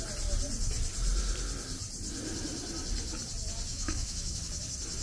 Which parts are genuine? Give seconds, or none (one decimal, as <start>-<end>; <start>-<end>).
0.0-3.7; 4.4-5.0